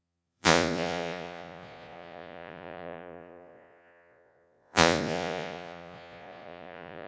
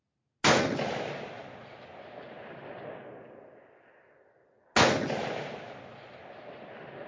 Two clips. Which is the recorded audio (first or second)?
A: second